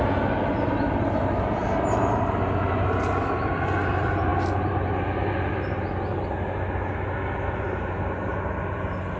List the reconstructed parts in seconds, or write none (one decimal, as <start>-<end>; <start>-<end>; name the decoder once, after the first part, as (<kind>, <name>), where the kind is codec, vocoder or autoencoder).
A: none